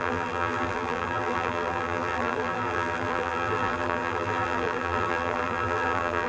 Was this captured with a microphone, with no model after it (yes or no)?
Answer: no